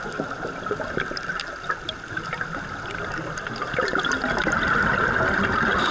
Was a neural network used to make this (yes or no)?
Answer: no